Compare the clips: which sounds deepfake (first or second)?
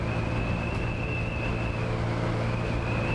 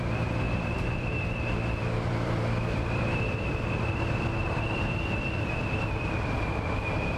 second